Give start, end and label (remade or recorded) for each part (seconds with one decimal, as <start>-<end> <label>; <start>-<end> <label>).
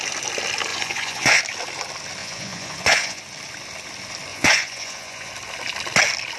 0.0-0.7 recorded; 0.7-1.4 remade; 1.4-2.2 recorded; 2.2-3.2 remade; 3.2-4.3 recorded; 4.3-5.3 remade; 5.3-6.4 recorded